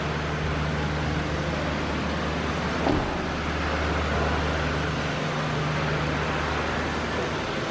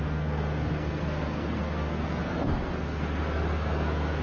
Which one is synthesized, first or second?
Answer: second